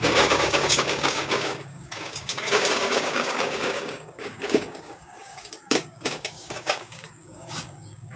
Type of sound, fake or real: fake